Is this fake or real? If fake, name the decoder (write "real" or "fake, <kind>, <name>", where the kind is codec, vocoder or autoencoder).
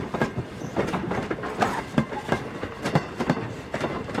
real